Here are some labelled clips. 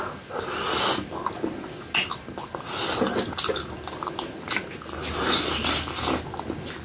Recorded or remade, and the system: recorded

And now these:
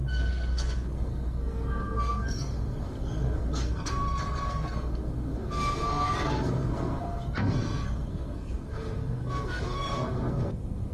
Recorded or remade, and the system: remade, codec, SNAC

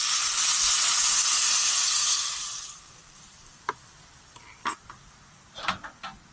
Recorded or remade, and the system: recorded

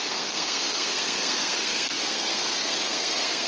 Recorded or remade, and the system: remade, codec, SNAC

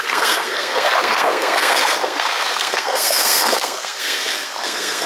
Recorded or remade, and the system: remade, codec, SNAC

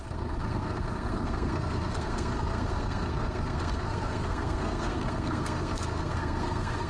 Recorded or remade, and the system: remade, codec, SNAC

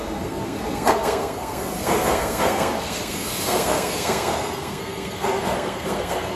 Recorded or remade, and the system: remade, codec, SNAC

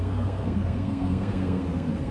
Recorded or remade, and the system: remade, codec, SNAC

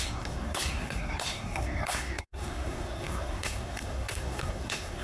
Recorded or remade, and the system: remade, codec, SNAC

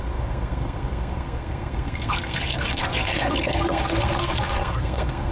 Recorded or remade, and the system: remade, codec, SNAC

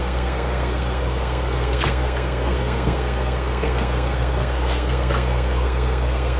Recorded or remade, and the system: remade, codec, SNAC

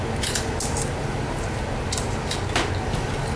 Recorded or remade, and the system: recorded